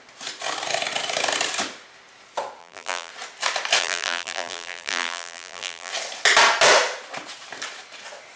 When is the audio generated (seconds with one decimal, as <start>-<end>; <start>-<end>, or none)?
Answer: 2.6-3.1; 3.8-5.9